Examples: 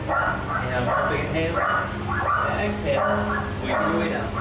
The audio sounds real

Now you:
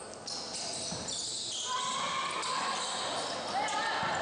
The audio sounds real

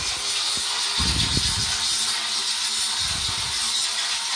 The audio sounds real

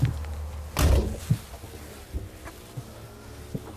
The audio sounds real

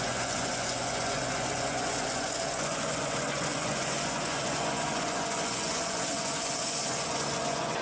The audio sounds fake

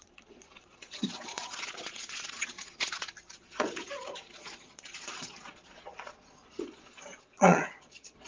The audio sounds fake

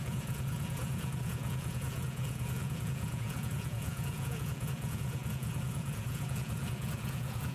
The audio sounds fake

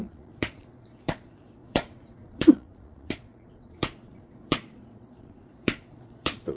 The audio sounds fake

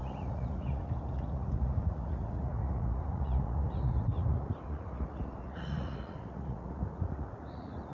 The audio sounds fake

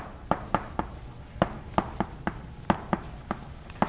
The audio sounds real